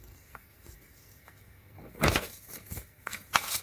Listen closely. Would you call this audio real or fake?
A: fake